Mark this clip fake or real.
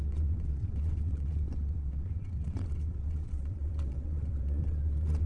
fake